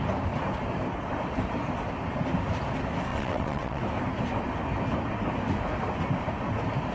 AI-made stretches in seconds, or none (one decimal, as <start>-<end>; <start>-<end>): 3.1-3.8